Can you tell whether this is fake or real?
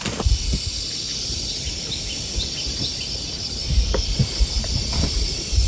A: real